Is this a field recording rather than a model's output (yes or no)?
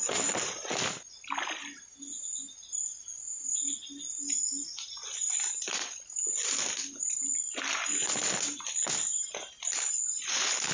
yes